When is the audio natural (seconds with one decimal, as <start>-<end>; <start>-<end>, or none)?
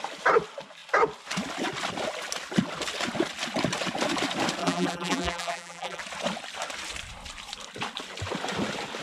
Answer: 0.0-4.6; 6.0-9.0